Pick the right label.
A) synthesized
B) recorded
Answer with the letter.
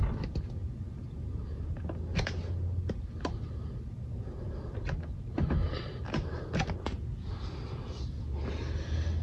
B